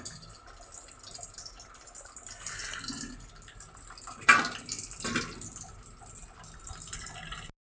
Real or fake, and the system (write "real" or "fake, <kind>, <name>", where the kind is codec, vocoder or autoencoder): real